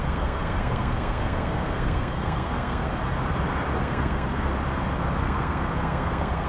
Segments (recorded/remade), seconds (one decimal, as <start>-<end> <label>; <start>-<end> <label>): 0.0-3.0 remade; 3.0-3.8 recorded; 3.8-4.5 remade; 4.5-5.2 recorded; 5.2-6.5 remade